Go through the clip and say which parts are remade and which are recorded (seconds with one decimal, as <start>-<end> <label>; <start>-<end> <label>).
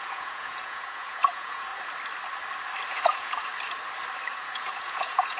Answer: 0.0-1.7 remade; 1.7-2.9 recorded; 2.9-3.5 remade; 3.5-4.3 recorded; 4.3-5.4 remade